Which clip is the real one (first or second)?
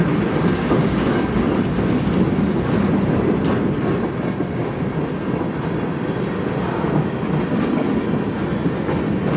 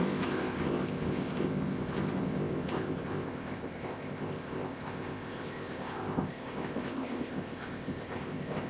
first